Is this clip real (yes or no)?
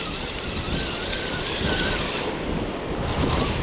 yes